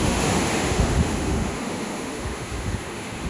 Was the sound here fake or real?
fake